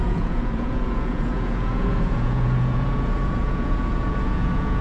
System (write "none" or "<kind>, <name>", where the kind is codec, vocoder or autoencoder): vocoder, Vocos